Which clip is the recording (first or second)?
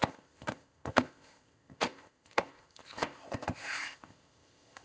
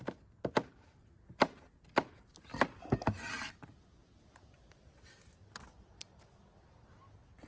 second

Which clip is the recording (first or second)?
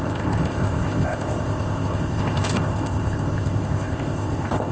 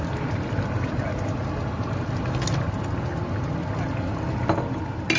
second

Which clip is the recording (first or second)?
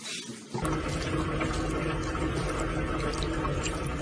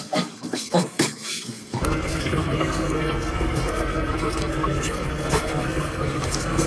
first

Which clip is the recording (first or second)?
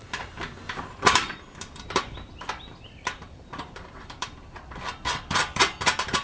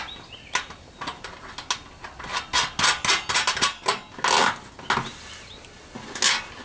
second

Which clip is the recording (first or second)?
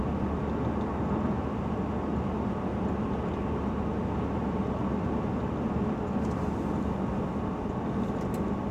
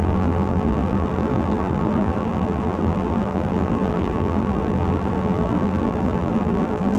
first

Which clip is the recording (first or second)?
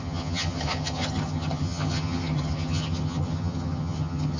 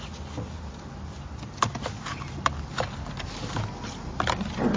second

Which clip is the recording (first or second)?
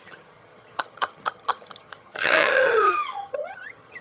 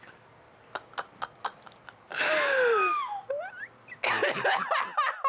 second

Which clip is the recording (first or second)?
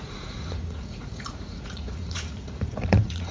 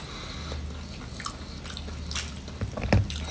second